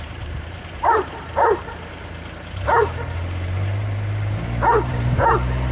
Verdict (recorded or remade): remade